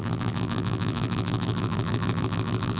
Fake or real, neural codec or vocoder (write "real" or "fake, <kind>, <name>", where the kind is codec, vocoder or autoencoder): fake, vocoder, BigVGAN v2